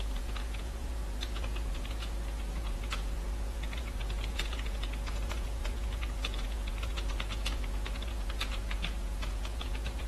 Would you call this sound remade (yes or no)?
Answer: yes